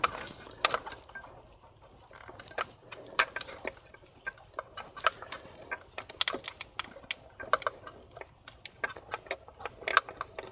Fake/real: real